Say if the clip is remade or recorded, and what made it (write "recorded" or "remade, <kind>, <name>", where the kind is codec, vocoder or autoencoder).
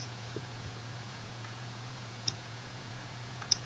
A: remade, vocoder, Vocos